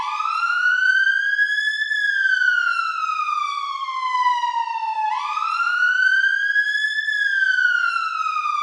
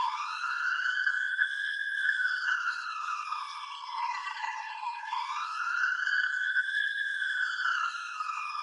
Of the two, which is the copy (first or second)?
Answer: second